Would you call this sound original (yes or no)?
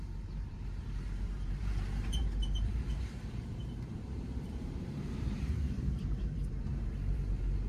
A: no